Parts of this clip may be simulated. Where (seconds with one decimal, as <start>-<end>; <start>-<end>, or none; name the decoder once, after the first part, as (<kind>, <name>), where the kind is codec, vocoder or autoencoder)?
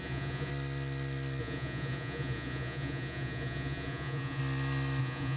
0.0-0.5 (vocoder, Vocos); 1.4-4.4; 5.0-5.4